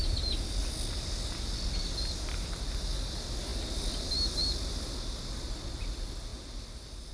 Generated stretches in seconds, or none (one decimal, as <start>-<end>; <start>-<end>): none